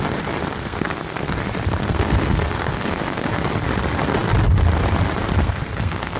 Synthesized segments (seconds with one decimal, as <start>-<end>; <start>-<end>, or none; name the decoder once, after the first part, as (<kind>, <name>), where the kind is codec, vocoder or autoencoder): 0.4-1.3 (codec, SNAC); 1.8-3.3; 5.4-6.2